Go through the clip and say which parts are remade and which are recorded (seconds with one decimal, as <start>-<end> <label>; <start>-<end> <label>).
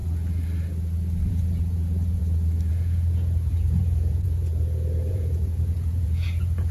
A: 0.0-1.3 recorded; 1.3-2.2 remade; 2.2-2.7 recorded; 2.7-4.5 remade; 4.5-5.1 recorded; 5.1-6.7 remade